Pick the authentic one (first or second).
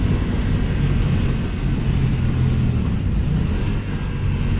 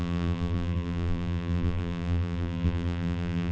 first